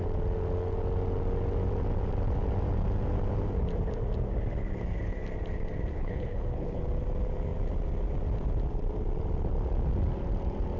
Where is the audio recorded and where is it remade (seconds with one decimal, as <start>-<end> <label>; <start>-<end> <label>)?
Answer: 0.0-5.9 recorded; 5.9-6.8 remade; 6.8-10.8 recorded